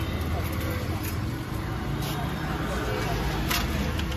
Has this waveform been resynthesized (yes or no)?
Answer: no